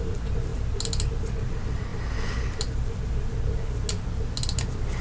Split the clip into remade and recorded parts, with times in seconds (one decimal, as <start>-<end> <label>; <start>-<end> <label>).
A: 0.0-5.0 recorded

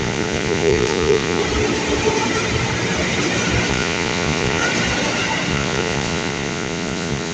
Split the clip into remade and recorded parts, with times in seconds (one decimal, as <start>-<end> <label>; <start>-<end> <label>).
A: 0.0-1.4 remade; 1.4-3.7 recorded; 3.7-4.6 remade; 4.6-5.5 recorded; 5.5-7.3 remade

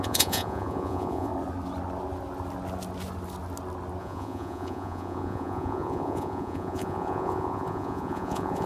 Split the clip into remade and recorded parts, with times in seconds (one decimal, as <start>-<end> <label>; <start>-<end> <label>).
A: 0.0-1.3 remade; 1.3-4.0 recorded; 4.0-8.7 remade

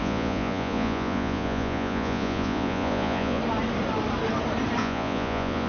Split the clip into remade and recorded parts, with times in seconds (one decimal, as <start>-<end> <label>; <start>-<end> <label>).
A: 0.0-3.4 remade; 3.4-4.8 recorded; 4.8-5.7 remade

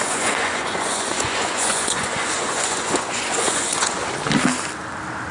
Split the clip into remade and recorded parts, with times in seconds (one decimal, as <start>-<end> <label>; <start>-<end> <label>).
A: 0.0-4.0 remade; 4.0-5.3 recorded